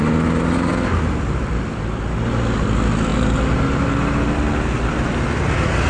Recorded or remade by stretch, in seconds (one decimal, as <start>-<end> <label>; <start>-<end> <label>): 0.0-5.9 recorded